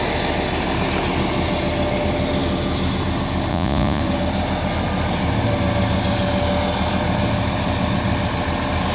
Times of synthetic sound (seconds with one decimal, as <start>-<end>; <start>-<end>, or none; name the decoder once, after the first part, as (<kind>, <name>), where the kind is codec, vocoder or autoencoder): 3.5-4.0 (vocoder, Vocos)